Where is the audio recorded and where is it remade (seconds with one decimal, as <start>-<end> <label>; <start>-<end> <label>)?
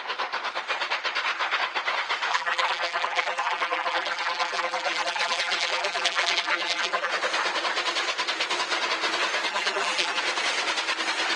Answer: 0.0-2.3 recorded; 2.3-7.1 remade; 7.1-9.5 recorded; 9.5-10.2 remade; 10.2-11.4 recorded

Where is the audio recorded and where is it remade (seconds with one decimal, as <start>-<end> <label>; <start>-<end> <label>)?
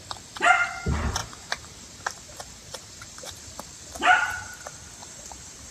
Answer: 0.0-1.2 recorded; 1.2-3.4 remade; 3.4-5.0 recorded; 5.0-5.7 remade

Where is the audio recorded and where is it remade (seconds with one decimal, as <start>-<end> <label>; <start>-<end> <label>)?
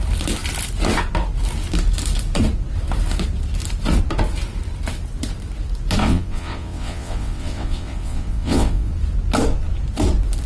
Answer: 0.0-6.0 recorded; 6.0-8.9 remade; 8.9-10.5 recorded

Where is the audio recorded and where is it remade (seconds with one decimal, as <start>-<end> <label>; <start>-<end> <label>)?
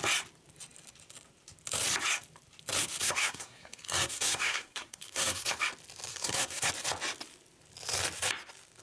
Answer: 0.0-3.0 recorded; 3.0-5.6 remade; 5.6-6.1 recorded; 6.1-6.7 remade; 6.7-8.8 recorded